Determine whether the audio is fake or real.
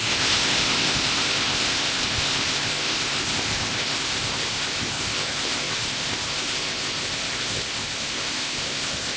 fake